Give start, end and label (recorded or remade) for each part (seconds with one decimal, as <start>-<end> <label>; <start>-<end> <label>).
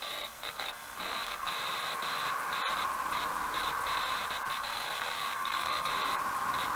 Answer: 0.0-1.5 remade; 1.5-4.5 recorded; 4.5-5.9 remade; 5.9-6.8 recorded